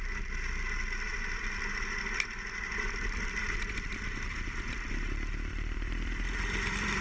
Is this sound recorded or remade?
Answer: remade